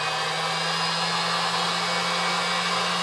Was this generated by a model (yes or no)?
no